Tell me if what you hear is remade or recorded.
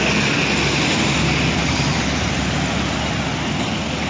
recorded